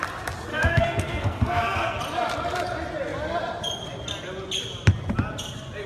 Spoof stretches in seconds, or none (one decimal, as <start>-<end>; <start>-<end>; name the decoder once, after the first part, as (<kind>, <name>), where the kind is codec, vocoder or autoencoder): 0.5-2.0 (codec, SNAC)